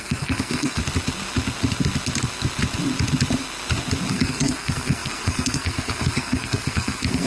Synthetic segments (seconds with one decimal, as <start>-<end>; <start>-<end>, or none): 0.0-0.8; 4.1-7.3